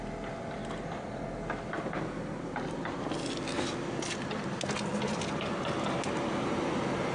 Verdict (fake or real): real